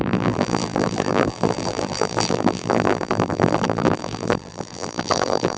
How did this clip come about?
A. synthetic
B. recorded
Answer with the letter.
A